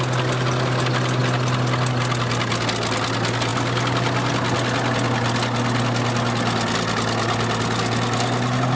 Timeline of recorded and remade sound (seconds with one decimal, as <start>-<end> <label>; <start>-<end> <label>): 0.0-8.8 recorded